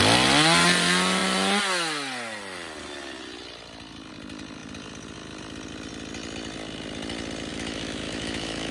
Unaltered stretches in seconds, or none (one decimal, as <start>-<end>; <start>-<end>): 0.0-7.5